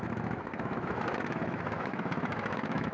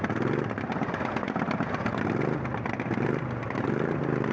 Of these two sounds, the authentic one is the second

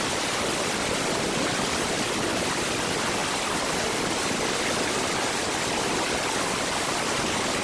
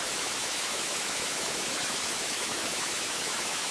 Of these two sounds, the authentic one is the first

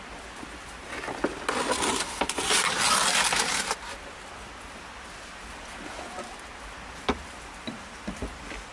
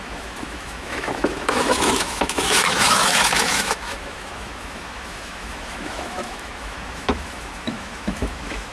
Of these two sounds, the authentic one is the first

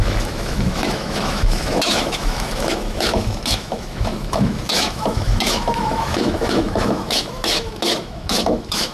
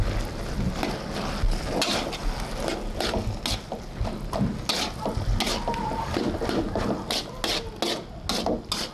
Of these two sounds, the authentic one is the second